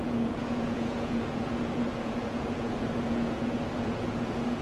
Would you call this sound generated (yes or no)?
yes